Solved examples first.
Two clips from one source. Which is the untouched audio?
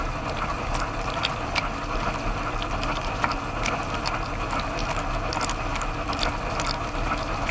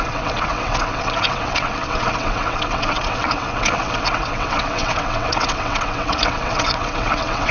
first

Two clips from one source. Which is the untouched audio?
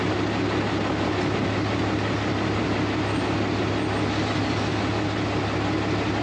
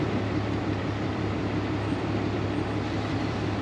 first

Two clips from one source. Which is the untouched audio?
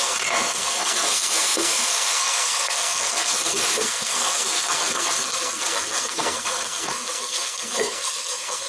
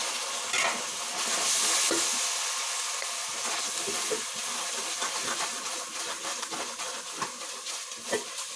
second